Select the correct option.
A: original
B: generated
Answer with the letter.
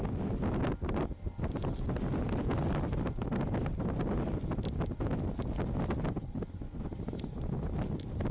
A